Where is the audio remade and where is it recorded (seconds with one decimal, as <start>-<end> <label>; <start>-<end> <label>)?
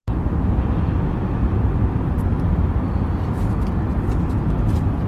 0.0-5.1 recorded